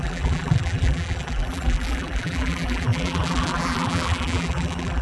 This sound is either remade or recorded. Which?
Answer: remade